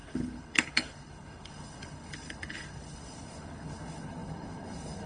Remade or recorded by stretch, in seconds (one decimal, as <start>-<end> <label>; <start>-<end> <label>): 0.0-5.1 remade